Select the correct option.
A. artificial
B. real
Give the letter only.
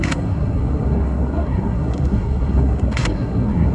A